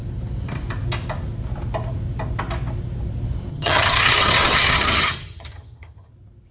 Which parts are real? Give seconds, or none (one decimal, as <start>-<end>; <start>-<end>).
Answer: 0.0-3.5; 6.1-6.5